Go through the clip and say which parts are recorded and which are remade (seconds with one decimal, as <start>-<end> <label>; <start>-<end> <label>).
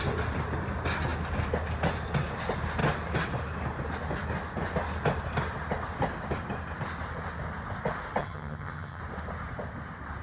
0.0-8.2 recorded; 8.2-9.0 remade; 9.0-10.2 recorded